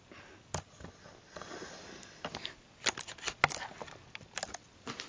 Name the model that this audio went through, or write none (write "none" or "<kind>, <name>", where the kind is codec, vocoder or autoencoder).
none